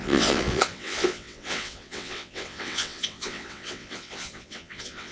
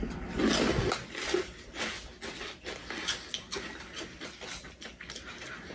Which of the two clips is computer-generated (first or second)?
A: first